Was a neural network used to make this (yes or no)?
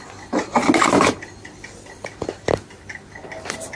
no